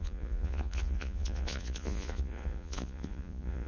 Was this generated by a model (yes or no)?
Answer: yes